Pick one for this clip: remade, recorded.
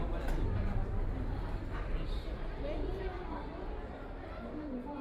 recorded